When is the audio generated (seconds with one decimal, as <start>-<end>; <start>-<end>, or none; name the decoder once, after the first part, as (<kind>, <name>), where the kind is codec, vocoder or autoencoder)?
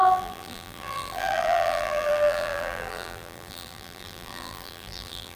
0.0-5.4 (vocoder, BigVGAN v2)